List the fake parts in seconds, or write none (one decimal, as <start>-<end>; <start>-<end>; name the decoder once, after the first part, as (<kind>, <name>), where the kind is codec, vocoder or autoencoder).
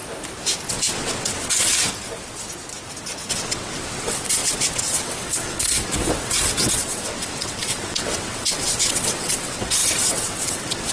0.7-1.9 (vocoder, WaveNeXt); 3.3-10.9